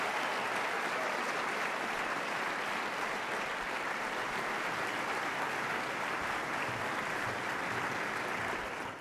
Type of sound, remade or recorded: recorded